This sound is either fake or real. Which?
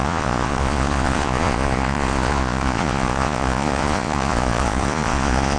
fake